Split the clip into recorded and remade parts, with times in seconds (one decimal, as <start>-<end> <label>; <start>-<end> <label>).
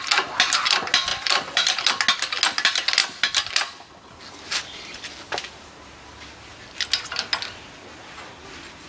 0.0-1.1 recorded; 1.1-1.8 remade; 1.8-3.0 recorded; 3.0-4.4 remade; 4.4-8.9 recorded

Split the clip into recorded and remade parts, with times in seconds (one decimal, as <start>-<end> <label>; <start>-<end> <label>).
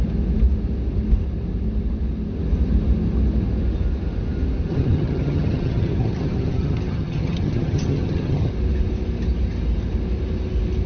0.0-4.7 recorded; 4.7-8.5 remade; 8.5-10.9 recorded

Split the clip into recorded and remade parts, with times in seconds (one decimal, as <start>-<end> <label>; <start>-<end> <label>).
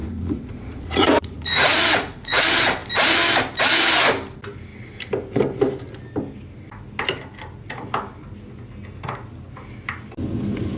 0.0-2.4 remade; 2.4-10.8 recorded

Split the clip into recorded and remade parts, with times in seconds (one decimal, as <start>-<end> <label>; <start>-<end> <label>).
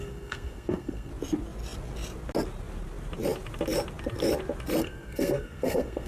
0.0-1.1 remade; 1.1-4.8 recorded; 4.8-6.1 remade